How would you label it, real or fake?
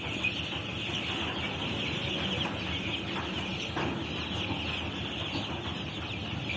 real